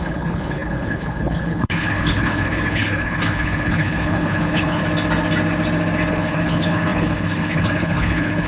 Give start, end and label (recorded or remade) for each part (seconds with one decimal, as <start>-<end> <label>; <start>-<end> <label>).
0.0-4.8 remade; 4.8-6.1 recorded; 6.1-8.5 remade